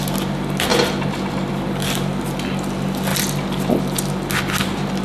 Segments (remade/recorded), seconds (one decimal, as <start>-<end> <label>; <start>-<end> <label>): 0.0-5.0 recorded

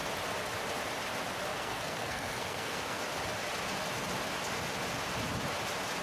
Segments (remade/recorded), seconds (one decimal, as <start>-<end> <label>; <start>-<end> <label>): 0.0-1.5 recorded; 1.5-3.0 remade; 3.0-6.0 recorded

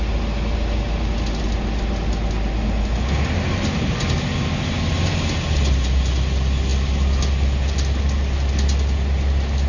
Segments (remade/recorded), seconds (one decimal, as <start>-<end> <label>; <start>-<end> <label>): 0.0-9.7 recorded

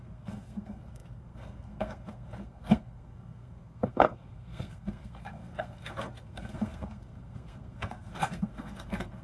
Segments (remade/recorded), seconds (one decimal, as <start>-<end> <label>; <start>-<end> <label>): 0.0-9.2 remade

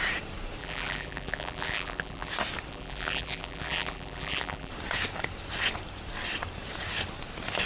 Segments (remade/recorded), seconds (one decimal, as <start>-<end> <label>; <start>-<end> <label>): 0.0-0.6 recorded; 0.6-2.3 remade; 2.3-2.7 recorded; 2.7-4.7 remade; 4.7-7.7 recorded

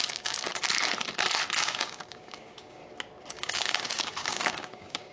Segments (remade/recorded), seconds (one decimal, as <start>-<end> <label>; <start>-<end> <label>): 0.0-0.5 remade; 0.5-1.6 recorded; 1.6-2.8 remade; 2.8-3.3 recorded; 3.3-5.1 remade

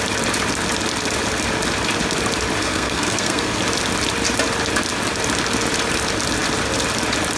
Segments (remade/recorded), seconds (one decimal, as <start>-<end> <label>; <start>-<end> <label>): 0.0-2.6 recorded; 2.6-3.6 remade; 3.6-7.4 recorded